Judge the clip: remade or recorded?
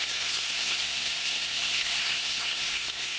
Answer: remade